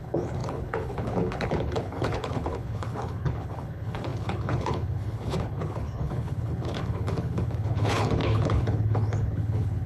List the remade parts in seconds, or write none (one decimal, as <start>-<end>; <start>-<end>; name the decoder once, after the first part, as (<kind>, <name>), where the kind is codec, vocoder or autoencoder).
0.0-9.9 (codec, HILCodec)